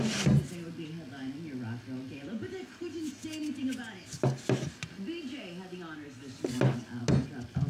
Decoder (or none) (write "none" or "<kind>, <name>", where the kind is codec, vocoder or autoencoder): none